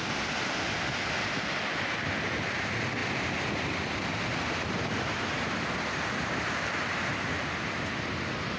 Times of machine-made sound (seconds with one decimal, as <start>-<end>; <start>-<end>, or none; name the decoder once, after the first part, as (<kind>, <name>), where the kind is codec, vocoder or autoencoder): 3.0-4.7 (vocoder, BigVGAN v2)